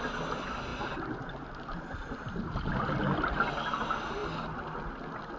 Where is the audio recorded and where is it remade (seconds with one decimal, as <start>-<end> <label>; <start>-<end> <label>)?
0.0-5.4 recorded